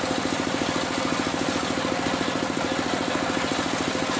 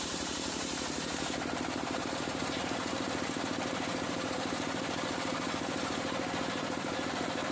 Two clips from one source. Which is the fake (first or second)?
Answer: second